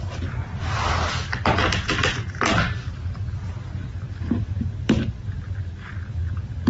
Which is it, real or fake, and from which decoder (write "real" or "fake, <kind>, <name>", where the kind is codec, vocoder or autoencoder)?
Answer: real